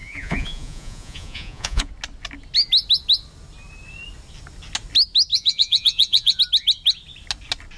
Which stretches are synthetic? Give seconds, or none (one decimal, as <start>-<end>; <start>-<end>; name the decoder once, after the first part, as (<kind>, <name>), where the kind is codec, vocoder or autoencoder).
0.0-1.9 (vocoder, Vocos); 5.3-6.4